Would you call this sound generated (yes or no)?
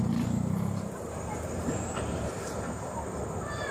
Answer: yes